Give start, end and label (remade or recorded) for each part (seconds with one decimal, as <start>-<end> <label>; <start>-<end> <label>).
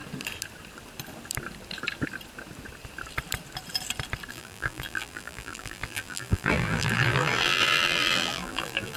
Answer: 0.0-4.3 recorded; 4.3-9.0 remade